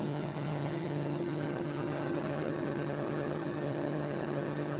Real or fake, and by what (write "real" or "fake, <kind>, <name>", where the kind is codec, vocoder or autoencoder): fake, vocoder, HiFi-GAN